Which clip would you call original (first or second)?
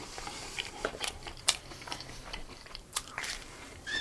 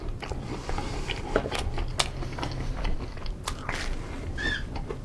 second